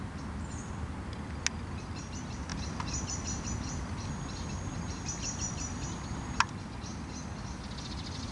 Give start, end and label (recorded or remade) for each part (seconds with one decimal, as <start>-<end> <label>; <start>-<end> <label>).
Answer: 0.0-8.3 recorded